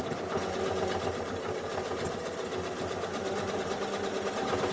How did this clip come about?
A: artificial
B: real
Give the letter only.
B